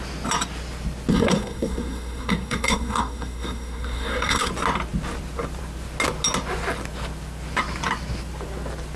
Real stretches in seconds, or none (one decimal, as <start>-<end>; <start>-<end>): 0.0-1.1; 4.5-9.0